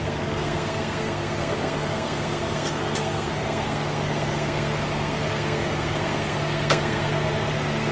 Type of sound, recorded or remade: remade